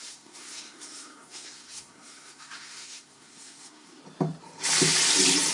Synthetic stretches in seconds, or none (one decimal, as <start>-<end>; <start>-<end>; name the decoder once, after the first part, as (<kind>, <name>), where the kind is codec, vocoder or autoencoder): 0.0-4.0 (codec, SNAC)